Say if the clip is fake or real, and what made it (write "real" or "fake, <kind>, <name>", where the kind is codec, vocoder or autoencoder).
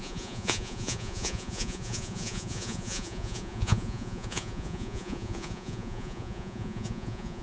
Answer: fake, vocoder, Vocos